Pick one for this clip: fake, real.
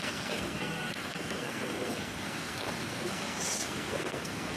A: fake